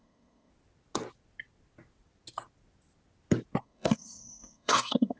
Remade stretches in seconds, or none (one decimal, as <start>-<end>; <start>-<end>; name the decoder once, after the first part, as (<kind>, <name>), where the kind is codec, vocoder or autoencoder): 0.0-0.5 (codec, SNAC); 3.6-5.2